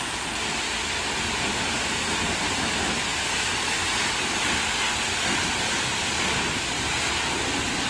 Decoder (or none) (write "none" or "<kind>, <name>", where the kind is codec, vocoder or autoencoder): none